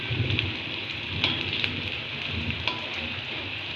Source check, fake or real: real